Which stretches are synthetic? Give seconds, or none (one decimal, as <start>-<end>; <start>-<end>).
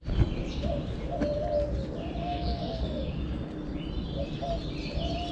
2.2-3.2